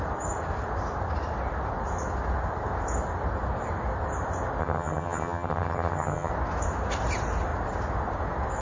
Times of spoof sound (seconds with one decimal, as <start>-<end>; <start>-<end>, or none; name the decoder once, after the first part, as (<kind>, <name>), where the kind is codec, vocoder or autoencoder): 4.6-6.3 (vocoder, HiFi-GAN)